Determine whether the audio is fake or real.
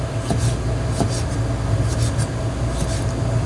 real